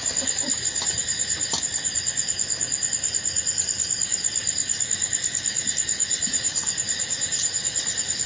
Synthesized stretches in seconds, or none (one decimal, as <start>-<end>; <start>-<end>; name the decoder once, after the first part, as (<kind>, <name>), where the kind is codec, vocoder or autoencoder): none